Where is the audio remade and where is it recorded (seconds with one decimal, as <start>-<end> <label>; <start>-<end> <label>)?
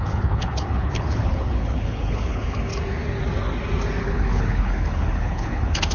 0.0-2.7 remade; 2.7-4.0 recorded; 4.0-5.9 remade